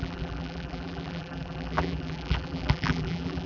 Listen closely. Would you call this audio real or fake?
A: fake